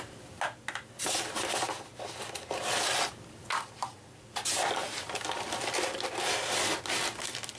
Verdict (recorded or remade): recorded